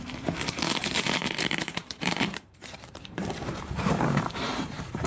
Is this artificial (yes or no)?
yes